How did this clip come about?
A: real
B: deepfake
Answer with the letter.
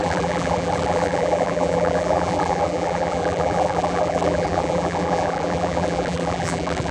B